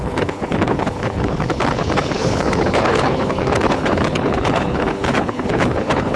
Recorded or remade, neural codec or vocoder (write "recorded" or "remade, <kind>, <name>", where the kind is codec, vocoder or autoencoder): remade, codec, HILCodec